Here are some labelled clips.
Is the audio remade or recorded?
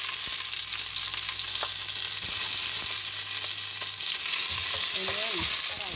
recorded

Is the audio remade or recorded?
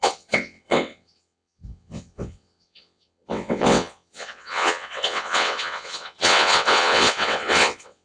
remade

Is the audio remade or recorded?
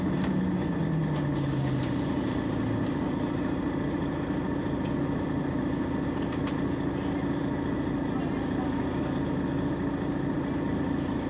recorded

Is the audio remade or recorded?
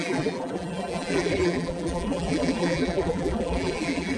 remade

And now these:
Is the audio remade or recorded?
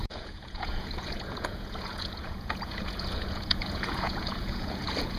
remade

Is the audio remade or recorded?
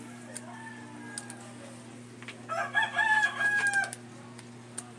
recorded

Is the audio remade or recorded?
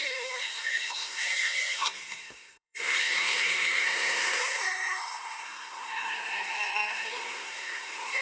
remade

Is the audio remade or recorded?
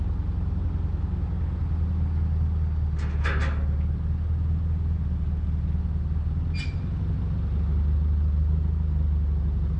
recorded